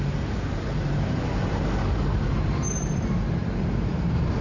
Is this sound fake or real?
fake